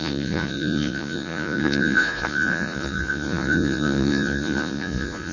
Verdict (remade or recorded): remade